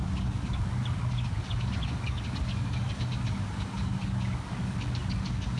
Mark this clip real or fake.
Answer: fake